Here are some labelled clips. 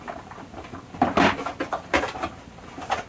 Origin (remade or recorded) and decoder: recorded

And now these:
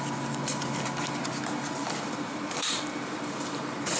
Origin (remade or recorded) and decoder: remade, vocoder, BigVGAN v2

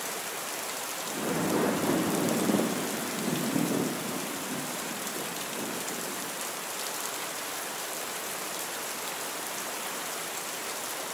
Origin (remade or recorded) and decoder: remade, vocoder, BigVGAN v2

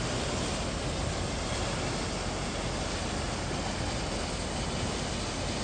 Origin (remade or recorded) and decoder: recorded